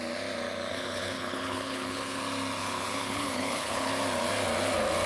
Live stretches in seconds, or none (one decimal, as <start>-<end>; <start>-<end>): 0.0-0.7; 2.2-2.6; 3.9-5.1